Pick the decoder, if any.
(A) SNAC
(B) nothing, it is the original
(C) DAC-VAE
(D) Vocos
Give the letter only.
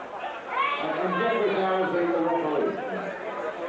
B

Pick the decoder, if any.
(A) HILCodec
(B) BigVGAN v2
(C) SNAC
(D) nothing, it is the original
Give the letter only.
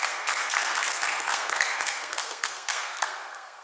C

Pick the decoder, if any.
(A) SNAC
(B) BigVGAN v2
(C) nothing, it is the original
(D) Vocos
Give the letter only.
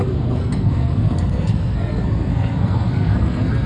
A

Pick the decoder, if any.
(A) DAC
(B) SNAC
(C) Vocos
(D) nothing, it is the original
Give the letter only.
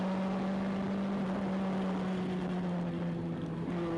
D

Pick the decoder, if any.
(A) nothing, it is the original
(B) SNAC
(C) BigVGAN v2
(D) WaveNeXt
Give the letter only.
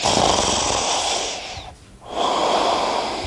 A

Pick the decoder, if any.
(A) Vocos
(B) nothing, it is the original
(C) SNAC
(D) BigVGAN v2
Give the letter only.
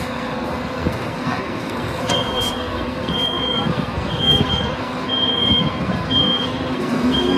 C